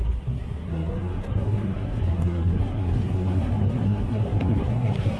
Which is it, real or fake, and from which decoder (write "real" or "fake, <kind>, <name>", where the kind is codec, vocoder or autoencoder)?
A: fake, codec, SNAC